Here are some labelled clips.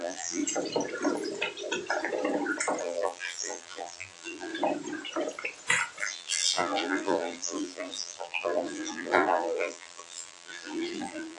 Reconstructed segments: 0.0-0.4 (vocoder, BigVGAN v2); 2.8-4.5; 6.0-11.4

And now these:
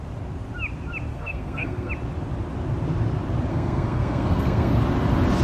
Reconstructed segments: 1.1-1.9 (codec, SNAC); 3.5-4.7